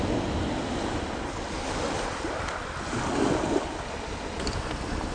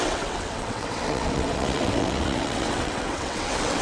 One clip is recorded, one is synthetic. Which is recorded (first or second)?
first